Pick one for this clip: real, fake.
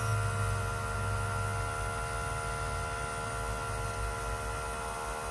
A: real